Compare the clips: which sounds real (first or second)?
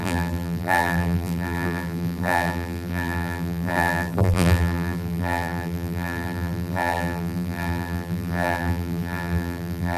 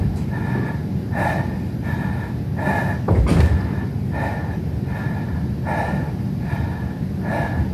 second